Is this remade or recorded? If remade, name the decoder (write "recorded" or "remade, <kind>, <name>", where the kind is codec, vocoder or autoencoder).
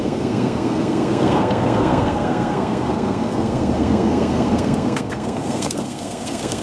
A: remade, codec, SNAC